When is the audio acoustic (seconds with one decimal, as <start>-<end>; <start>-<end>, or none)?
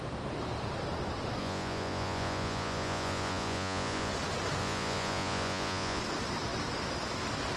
0.0-1.4; 4.1-4.6; 6.0-7.6